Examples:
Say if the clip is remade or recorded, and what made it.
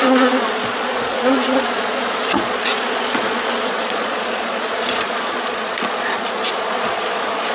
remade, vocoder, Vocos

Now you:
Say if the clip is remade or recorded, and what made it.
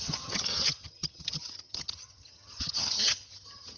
remade, vocoder, HiFi-GAN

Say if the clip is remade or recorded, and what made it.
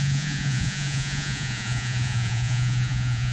remade, vocoder, Vocos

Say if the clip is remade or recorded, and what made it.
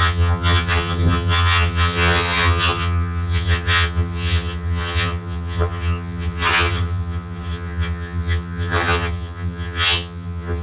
remade, vocoder, HiFi-GAN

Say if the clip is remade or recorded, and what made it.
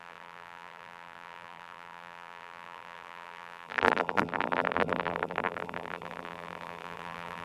remade, vocoder, BigVGAN v2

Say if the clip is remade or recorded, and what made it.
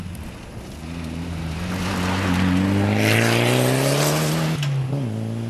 recorded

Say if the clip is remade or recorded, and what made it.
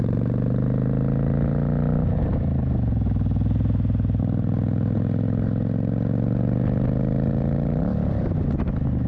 recorded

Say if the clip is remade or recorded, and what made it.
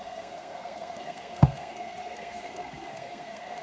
remade, codec, SNAC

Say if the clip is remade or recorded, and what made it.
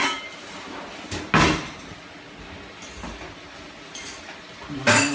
recorded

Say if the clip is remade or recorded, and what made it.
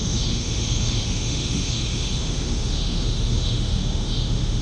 remade, autoencoder, DAC-VAE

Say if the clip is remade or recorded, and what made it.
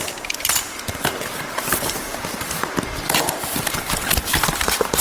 recorded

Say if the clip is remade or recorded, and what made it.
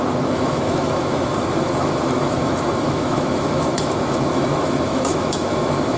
remade, autoencoder, DAC-VAE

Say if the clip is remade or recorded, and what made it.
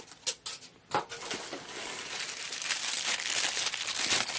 recorded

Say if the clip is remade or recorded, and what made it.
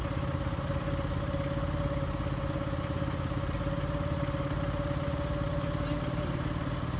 recorded